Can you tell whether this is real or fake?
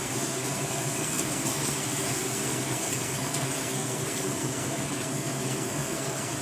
fake